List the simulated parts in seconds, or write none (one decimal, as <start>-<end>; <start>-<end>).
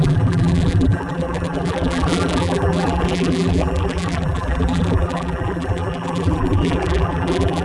0.0-7.6